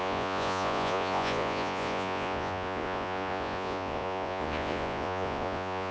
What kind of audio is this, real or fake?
fake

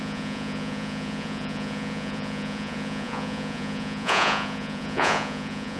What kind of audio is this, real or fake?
fake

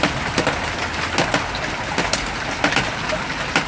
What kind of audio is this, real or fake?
real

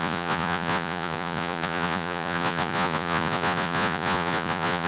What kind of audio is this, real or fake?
fake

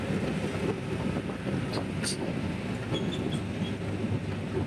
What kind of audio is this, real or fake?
real